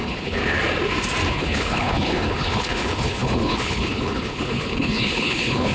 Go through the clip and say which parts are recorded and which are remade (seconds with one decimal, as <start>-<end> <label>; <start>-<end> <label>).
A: 0.0-0.4 remade; 0.4-1.3 recorded; 1.3-5.7 remade